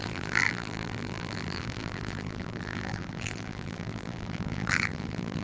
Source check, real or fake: fake